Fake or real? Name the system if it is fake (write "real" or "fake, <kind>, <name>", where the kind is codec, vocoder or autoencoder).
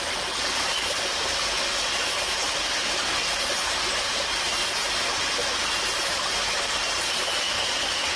real